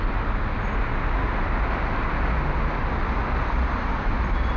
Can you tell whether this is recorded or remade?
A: recorded